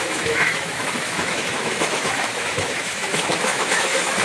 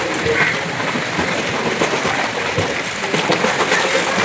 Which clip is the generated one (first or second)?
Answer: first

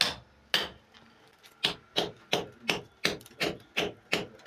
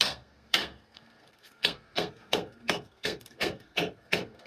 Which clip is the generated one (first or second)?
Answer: second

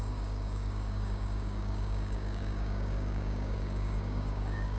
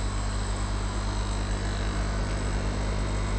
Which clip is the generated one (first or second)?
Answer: first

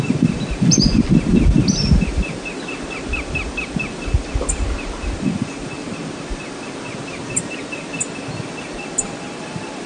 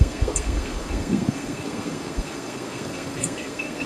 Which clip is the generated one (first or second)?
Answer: second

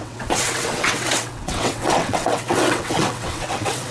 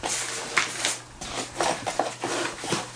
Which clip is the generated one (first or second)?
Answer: first